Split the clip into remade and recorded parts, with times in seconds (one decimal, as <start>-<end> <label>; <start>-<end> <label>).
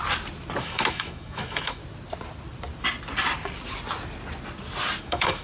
0.0-0.6 recorded; 0.6-1.8 remade; 1.8-5.0 recorded; 5.0-5.4 remade